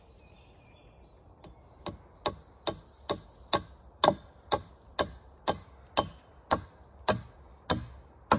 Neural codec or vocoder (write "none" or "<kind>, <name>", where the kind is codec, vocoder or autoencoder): none